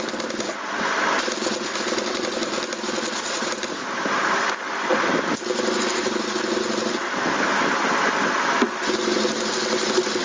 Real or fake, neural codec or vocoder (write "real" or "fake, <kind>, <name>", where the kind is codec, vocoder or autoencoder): real